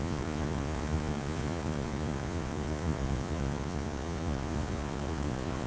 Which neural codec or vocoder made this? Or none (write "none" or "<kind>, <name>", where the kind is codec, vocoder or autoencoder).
vocoder, Vocos